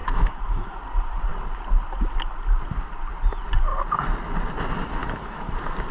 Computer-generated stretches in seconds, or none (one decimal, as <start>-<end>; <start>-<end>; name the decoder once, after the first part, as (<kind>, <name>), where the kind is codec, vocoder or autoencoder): 0.0-0.8 (autoencoder, DAC-VAE); 5.0-5.5